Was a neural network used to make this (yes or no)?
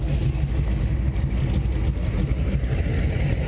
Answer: no